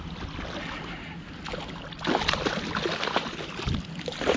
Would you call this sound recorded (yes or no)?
yes